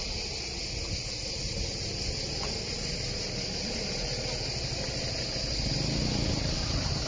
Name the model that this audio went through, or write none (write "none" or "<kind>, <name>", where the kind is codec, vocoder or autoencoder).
none